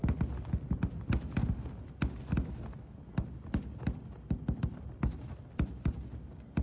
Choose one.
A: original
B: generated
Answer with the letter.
A